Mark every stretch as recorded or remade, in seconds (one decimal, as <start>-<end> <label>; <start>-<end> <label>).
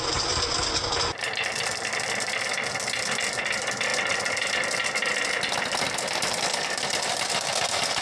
0.0-8.0 recorded